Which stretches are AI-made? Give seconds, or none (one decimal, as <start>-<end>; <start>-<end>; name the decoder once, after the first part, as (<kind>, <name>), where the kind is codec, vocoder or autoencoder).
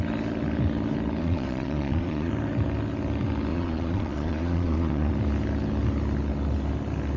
1.2-2.3 (vocoder, Vocos); 3.5-5.1